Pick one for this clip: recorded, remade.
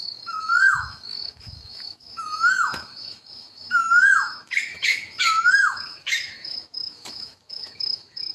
remade